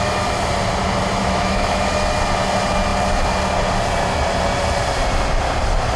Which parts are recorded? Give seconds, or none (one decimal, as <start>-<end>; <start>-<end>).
0.0-1.2; 1.9-6.0